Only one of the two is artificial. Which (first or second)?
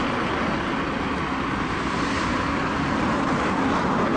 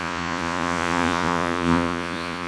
second